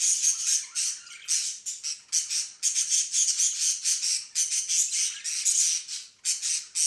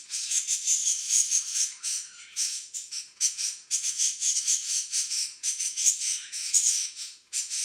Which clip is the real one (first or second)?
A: first